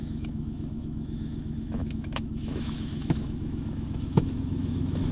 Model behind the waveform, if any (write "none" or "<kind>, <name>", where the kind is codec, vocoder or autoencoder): autoencoder, DAC-VAE